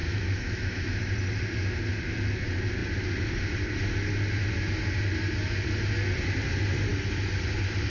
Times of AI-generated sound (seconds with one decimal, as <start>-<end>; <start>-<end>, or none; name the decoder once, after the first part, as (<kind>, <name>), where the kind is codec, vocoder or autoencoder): 0.0-1.1 (autoencoder, DAC-VAE)